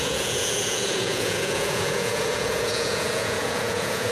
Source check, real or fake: fake